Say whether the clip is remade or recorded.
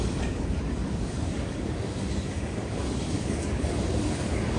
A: remade